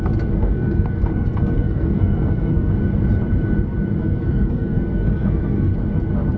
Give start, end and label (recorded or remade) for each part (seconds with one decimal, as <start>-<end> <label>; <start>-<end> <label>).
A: 0.0-2.7 remade; 2.7-4.0 recorded; 4.0-5.7 remade; 5.7-6.4 recorded